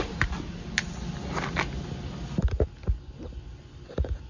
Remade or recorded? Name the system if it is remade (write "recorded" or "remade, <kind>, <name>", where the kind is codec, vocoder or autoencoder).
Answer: recorded